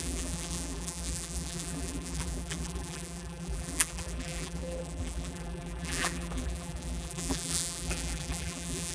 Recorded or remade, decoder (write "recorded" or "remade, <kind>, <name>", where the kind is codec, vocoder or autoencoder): remade, vocoder, BigVGAN v2